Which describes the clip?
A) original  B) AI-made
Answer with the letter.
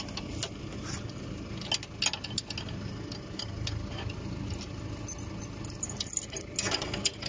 A